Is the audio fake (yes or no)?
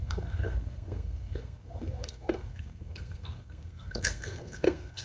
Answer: yes